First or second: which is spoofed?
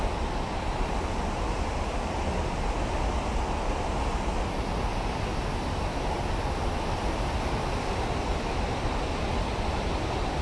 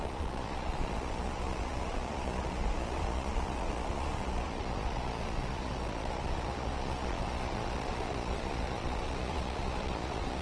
second